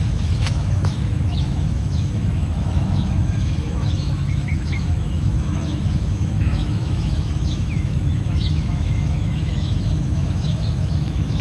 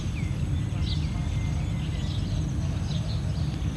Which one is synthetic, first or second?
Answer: first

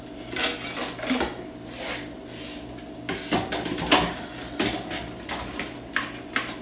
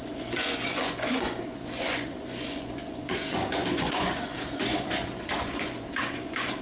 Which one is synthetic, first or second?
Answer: second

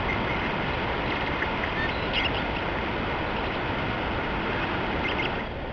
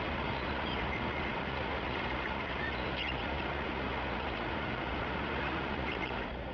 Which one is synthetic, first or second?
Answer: second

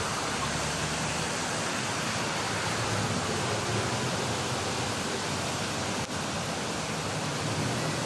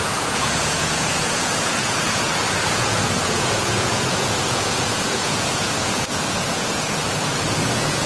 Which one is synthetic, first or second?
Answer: second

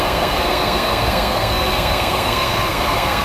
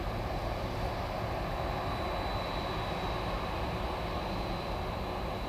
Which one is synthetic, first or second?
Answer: first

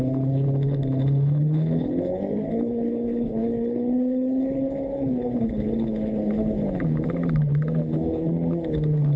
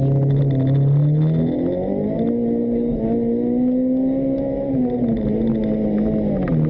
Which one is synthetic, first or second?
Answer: first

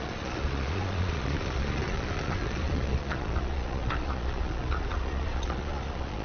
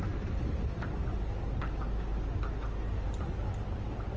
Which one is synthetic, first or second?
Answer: first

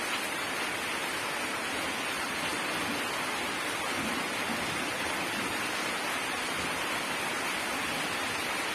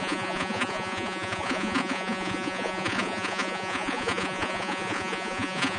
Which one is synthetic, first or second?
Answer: second